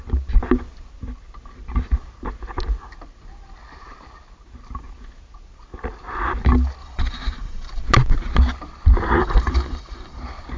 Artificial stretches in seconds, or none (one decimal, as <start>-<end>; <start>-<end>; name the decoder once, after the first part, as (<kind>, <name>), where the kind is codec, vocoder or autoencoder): 6.8-7.8 (vocoder, BigVGAN v2); 9.2-10.2

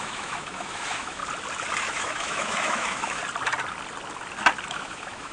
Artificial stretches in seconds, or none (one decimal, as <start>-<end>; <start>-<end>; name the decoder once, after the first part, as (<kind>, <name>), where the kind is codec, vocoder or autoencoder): 0.0-1.2 (autoencoder, DAC-VAE); 1.8-3.2; 4.7-5.3

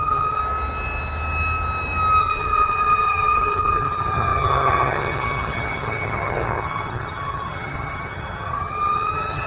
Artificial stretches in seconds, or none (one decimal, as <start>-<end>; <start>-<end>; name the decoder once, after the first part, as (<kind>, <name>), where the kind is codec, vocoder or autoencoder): 0.0-0.4 (vocoder, HiFi-GAN); 2.2-9.5

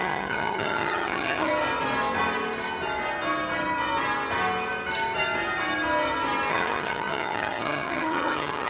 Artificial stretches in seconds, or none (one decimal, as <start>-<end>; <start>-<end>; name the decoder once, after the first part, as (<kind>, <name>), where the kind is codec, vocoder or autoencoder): 0.0-1.5 (vocoder, HiFi-GAN); 6.5-8.7